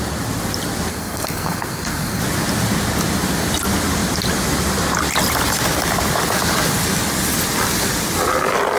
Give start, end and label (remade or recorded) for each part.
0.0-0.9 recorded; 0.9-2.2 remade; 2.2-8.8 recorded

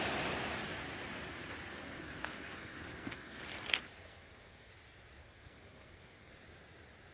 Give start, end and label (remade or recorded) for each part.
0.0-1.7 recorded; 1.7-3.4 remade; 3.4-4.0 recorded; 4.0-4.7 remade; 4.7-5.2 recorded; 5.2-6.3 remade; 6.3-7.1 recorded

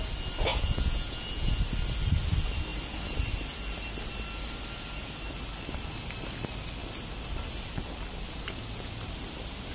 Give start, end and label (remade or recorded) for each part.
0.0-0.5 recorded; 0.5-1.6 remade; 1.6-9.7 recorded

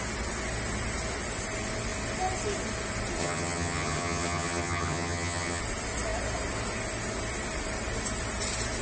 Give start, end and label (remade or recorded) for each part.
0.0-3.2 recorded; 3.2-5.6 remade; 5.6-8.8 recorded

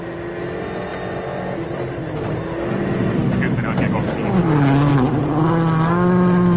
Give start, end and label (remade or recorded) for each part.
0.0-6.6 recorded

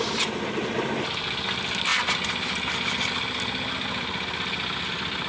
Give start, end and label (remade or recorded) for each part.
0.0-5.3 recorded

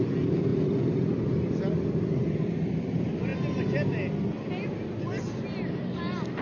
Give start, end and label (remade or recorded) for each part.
0.0-0.5 recorded; 0.5-1.4 remade; 1.4-6.4 recorded

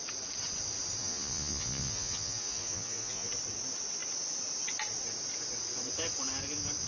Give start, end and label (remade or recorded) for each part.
0.0-1.0 recorded; 1.0-3.3 remade; 3.3-6.9 recorded